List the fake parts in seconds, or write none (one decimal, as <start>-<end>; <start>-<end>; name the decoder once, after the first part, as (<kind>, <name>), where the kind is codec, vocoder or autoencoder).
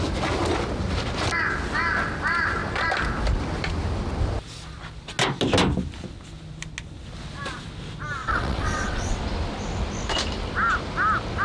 8.2-9.2 (vocoder, WaveNeXt)